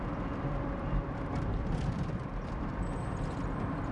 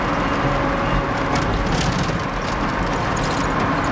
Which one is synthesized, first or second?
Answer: first